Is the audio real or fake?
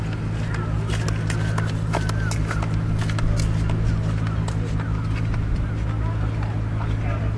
real